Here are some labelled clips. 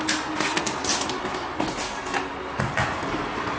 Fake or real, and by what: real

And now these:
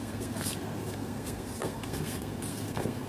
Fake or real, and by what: fake, codec, SNAC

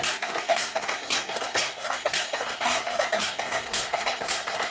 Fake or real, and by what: fake, codec, SNAC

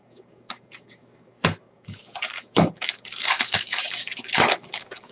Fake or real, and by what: fake, codec, DAC